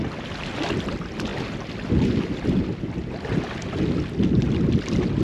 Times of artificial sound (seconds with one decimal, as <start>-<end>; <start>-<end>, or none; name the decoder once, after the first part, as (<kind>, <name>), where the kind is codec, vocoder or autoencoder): none